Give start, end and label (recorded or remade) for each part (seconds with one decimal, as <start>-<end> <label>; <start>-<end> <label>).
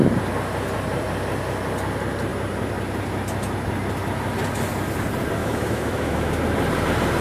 0.0-5.4 recorded; 5.4-6.3 remade; 6.3-7.2 recorded